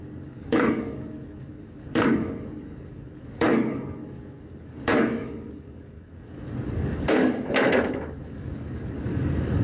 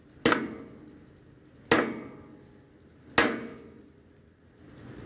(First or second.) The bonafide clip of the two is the second